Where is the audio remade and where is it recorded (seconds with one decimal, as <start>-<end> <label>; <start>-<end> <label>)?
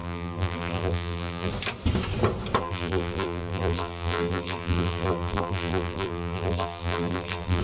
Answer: 0.0-1.5 remade; 1.5-2.6 recorded; 2.6-7.6 remade